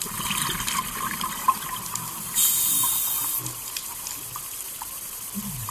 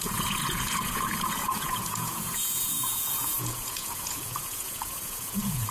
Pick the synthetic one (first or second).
second